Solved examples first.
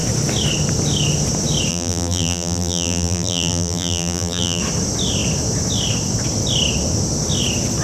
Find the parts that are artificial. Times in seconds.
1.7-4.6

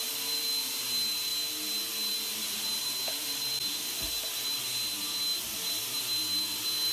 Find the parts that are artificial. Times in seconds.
5.3-6.0

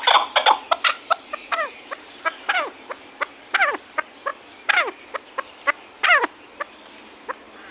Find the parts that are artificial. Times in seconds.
0.9-2.4

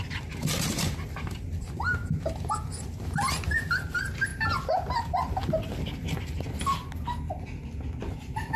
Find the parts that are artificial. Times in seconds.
0.0-2.0; 3.7-4.3; 8.0-8.6

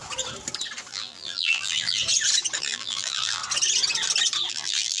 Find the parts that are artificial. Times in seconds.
0.9-2.0; 2.6-3.4; 4.5-5.0

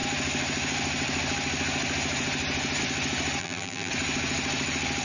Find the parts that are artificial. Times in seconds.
3.4-3.9

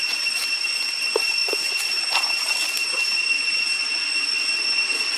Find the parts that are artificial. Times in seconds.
none